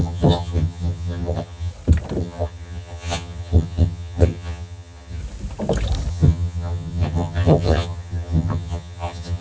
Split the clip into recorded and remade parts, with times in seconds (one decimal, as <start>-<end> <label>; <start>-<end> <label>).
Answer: 0.0-1.7 remade; 1.7-2.2 recorded; 2.2-5.2 remade; 5.2-6.1 recorded; 6.1-9.4 remade